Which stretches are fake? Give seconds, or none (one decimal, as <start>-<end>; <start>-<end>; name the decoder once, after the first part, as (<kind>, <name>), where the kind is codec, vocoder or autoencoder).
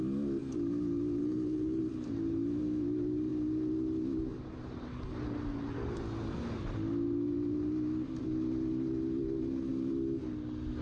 1.2-1.8 (codec, HILCodec)